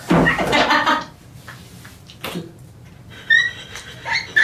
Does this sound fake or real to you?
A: real